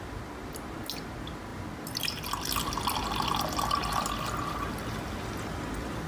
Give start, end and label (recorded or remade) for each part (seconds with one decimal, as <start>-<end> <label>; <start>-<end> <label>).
0.0-6.1 recorded